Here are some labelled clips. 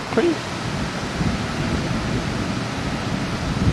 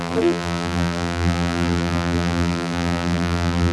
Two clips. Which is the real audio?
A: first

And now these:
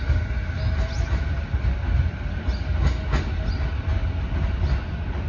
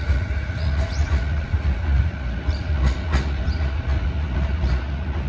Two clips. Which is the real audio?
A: first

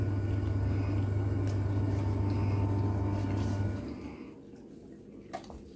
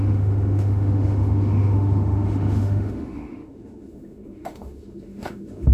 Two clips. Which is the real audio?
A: first